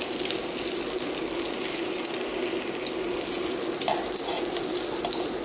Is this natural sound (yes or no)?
yes